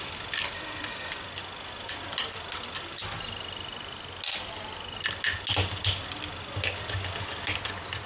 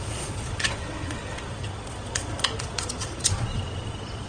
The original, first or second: first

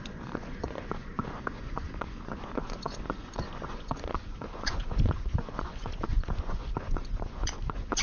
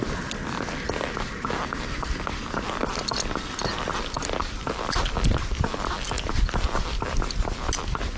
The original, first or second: second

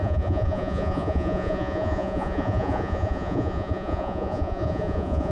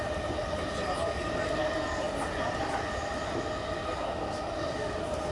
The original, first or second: second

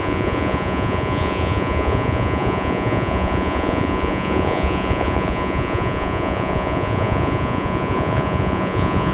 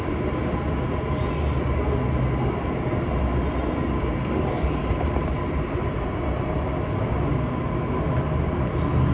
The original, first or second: second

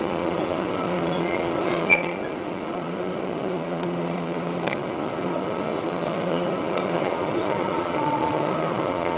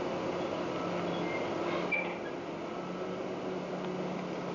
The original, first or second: second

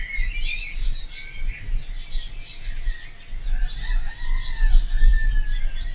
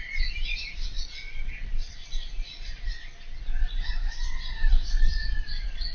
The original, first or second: first